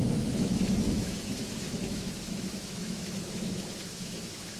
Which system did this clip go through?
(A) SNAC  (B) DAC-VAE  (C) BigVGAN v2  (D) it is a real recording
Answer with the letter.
B